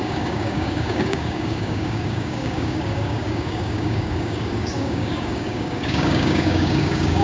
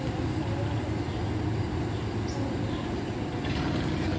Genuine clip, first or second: second